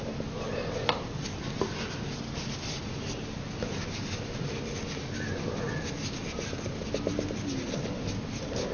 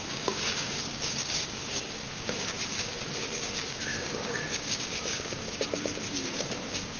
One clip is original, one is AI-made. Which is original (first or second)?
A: first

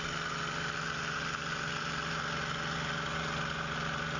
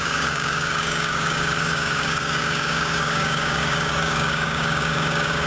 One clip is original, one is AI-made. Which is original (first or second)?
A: first